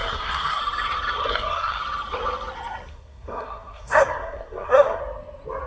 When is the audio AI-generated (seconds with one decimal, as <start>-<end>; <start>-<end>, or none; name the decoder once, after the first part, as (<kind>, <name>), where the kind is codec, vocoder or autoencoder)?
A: 0.0-0.6 (codec, SNAC); 1.2-1.8; 2.9-5.0